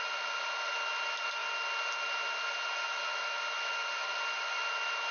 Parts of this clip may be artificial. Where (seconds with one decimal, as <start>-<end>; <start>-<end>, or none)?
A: none